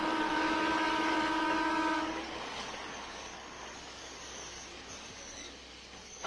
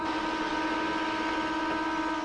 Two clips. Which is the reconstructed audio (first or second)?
first